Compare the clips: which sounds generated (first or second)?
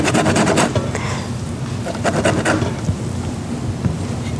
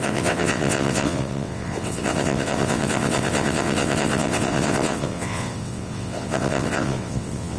second